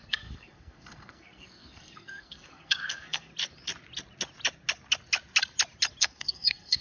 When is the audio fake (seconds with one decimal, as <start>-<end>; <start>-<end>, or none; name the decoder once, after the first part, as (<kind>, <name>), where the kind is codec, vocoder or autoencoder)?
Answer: 0.0-3.3 (codec, SNAC); 6.0-6.8